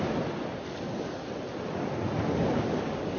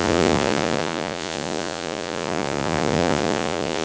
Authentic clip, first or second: first